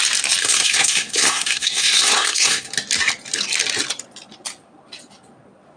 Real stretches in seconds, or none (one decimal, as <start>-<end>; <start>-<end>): 0.0-0.4; 2.7-5.8